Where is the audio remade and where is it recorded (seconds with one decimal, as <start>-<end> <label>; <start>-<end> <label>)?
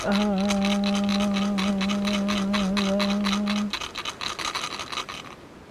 0.0-5.7 recorded